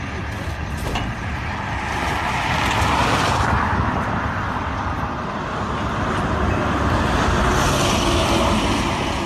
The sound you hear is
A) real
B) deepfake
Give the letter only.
A